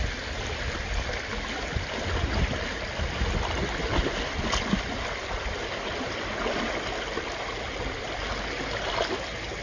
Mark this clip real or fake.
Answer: real